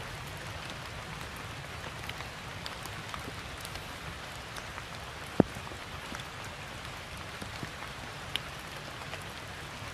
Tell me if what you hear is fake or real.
fake